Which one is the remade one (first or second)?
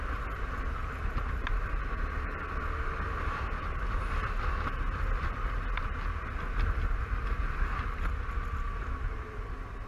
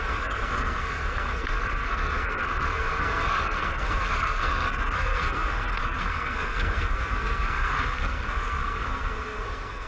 second